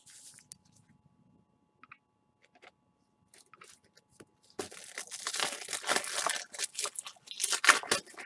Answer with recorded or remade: recorded